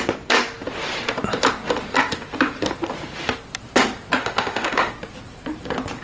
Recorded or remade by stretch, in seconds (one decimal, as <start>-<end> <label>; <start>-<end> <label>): 0.0-4.2 recorded; 4.2-4.9 remade; 4.9-6.0 recorded